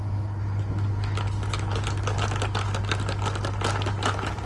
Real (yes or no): yes